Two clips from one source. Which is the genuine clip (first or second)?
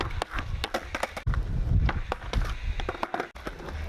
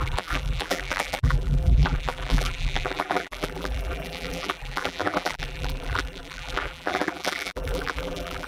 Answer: first